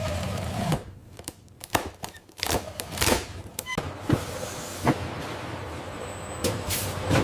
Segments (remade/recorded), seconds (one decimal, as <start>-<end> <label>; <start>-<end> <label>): 0.0-3.7 remade; 3.7-5.2 recorded; 5.2-7.2 remade